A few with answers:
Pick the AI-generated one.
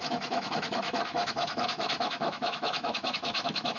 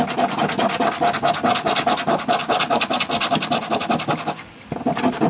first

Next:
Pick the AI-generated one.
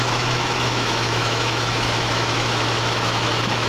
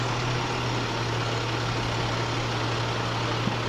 first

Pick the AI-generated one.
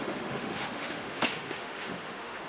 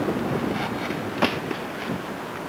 first